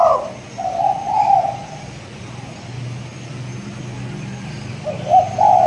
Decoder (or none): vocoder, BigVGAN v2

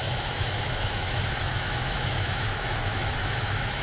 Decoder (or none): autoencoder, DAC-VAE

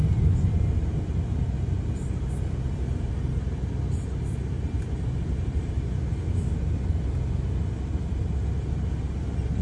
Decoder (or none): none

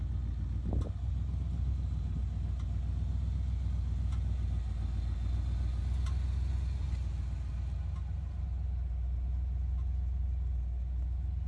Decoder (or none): none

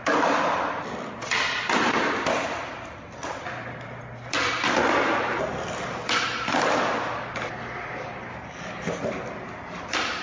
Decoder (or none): none